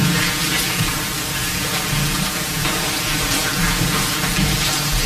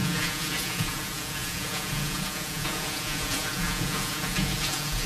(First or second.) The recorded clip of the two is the first